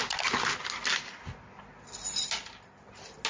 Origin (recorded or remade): recorded